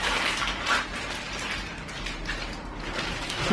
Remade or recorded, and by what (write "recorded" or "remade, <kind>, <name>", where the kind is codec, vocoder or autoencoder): recorded